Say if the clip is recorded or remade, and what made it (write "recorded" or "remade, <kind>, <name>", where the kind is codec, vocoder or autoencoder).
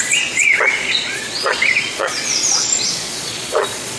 remade, vocoder, Vocos